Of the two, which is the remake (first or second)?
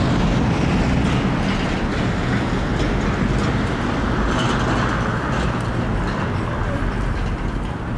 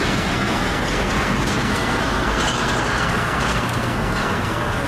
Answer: second